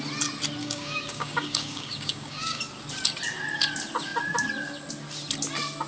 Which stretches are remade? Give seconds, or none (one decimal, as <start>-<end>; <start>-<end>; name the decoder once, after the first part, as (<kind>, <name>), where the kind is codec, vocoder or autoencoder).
0.6-2.6 (codec, DAC)